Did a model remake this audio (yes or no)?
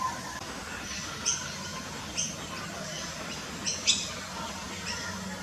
no